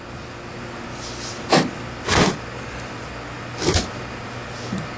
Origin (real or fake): real